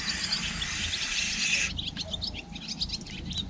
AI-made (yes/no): no